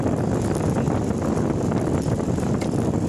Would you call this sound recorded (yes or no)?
yes